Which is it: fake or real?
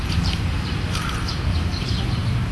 fake